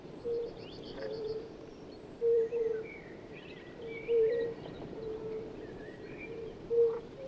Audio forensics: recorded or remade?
remade